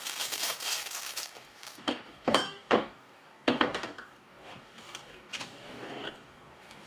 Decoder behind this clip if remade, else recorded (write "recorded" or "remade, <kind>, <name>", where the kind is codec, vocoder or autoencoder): remade, codec, DAC